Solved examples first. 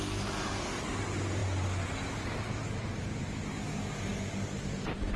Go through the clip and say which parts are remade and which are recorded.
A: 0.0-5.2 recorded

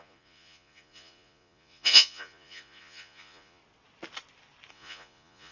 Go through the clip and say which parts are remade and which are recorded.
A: 0.0-3.6 remade; 3.6-4.7 recorded; 4.7-5.5 remade